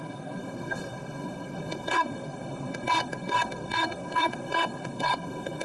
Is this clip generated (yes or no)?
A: yes